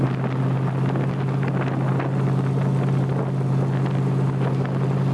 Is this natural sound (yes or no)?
yes